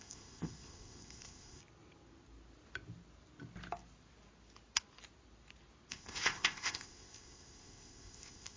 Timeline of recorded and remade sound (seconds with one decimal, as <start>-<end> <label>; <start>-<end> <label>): 0.0-1.6 remade; 1.6-5.9 recorded; 5.9-8.6 remade